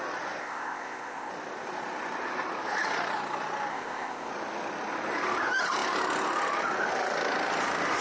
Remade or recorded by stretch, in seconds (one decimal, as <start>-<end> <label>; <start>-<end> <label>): 0.0-0.4 recorded; 0.4-1.3 remade; 1.3-3.7 recorded; 3.7-4.3 remade; 4.3-8.0 recorded

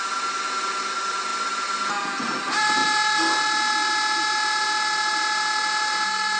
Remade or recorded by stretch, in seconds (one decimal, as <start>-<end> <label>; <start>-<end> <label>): 0.0-6.4 recorded

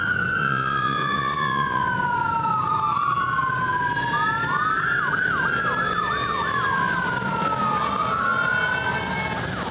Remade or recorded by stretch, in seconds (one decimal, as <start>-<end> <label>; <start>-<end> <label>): 0.0-0.4 recorded; 0.4-1.9 remade; 1.9-9.7 recorded

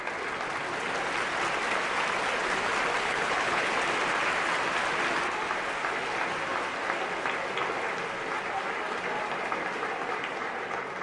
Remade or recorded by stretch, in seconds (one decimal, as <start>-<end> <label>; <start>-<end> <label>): 0.0-3.0 recorded; 3.0-3.7 remade; 3.7-11.0 recorded

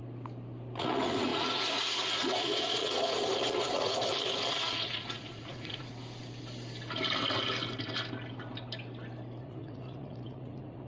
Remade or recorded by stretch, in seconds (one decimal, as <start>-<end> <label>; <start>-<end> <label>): 0.0-0.8 recorded; 0.8-5.9 remade; 5.9-9.4 recorded; 9.4-10.9 remade

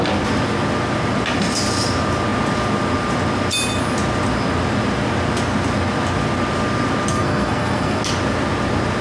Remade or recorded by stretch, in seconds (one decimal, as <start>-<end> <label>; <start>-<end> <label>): 0.0-7.1 recorded; 7.1-8.0 remade; 8.0-9.0 recorded

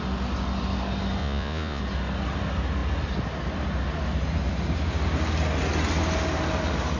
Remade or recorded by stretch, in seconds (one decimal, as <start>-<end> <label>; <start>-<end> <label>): 0.0-1.2 recorded; 1.2-1.8 remade; 1.8-7.0 recorded

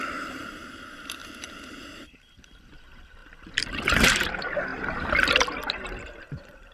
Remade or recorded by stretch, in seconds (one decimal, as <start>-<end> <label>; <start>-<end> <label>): 0.0-4.7 remade; 4.7-6.2 recorded; 6.2-6.7 remade